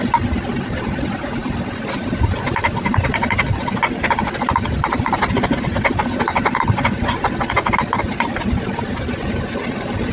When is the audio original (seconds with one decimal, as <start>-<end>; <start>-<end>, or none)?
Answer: 0.0-10.1